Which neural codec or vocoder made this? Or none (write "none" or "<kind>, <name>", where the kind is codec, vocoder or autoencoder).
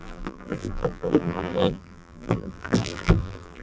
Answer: vocoder, BigVGAN v2